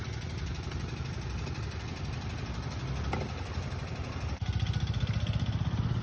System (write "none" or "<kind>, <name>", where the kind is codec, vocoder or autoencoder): none